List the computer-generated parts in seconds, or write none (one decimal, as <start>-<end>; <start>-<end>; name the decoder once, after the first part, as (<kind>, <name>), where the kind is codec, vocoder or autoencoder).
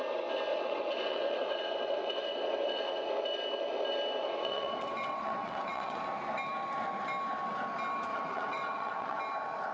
0.5-3.1 (vocoder, WaveNeXt); 4.2-6.0; 8.1-9.2